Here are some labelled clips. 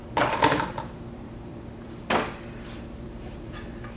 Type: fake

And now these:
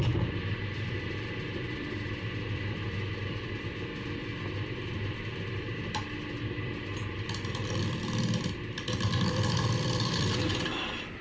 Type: fake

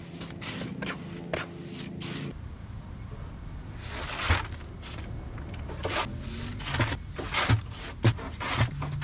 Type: real